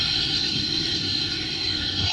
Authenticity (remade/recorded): remade